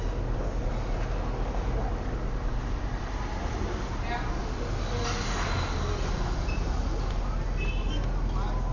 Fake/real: real